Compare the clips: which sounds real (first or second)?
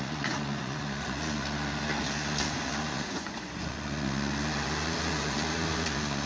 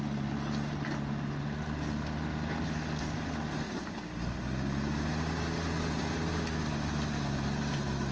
second